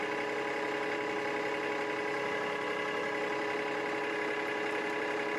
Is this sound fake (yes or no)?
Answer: no